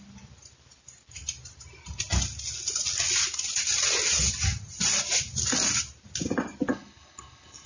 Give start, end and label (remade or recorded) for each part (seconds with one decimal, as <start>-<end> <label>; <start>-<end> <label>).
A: 0.0-6.7 recorded; 6.7-7.7 remade